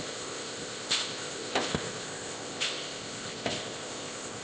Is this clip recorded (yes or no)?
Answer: no